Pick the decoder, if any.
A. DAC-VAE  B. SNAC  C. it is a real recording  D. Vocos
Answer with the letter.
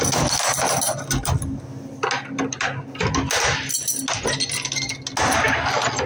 C